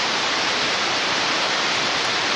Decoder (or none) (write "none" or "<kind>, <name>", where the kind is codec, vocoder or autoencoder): vocoder, BigVGAN v2